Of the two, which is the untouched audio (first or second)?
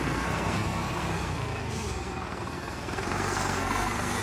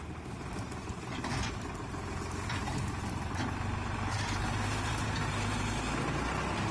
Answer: second